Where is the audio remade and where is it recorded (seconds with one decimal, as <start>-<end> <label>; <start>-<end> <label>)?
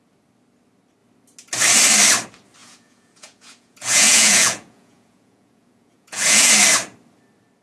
0.0-2.6 recorded; 2.6-6.5 remade; 6.5-7.6 recorded